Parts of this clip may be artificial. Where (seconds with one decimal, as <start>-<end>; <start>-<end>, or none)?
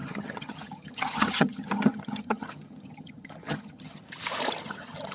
0.0-4.0; 4.6-5.1